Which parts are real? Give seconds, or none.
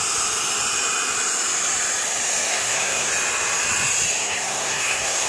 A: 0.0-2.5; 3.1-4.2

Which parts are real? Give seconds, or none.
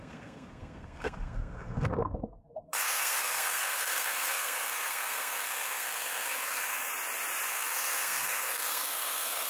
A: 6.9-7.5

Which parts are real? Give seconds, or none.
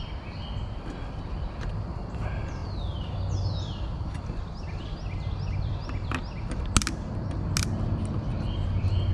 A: 0.0-9.1